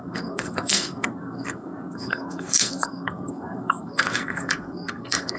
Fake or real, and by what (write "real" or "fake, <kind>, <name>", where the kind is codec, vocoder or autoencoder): fake, codec, SNAC